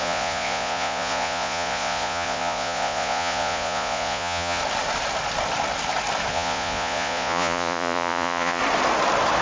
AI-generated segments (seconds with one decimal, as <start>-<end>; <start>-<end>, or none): 0.0-4.6; 6.3-8.6